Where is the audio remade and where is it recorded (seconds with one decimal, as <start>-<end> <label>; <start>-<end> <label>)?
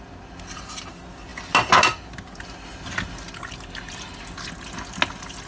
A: 0.0-5.5 recorded